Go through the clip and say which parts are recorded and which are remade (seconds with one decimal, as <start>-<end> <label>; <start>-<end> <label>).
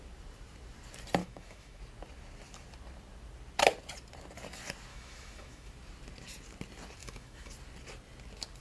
0.0-1.2 recorded; 1.2-1.8 remade; 1.8-4.9 recorded; 4.9-5.7 remade; 5.7-7.0 recorded; 7.0-7.5 remade; 7.5-8.6 recorded